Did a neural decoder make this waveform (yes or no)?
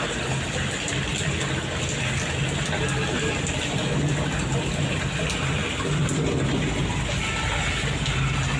no